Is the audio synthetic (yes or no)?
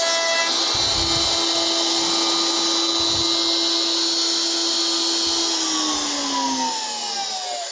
no